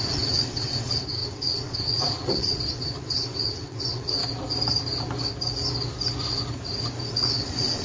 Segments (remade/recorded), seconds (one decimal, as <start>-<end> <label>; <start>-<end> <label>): 0.0-4.2 remade; 4.2-7.1 recorded; 7.1-7.8 remade